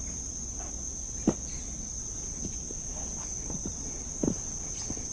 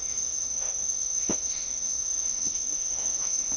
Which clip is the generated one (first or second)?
second